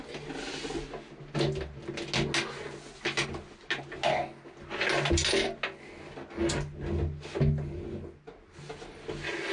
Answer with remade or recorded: recorded